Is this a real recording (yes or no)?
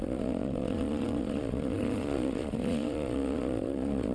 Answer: no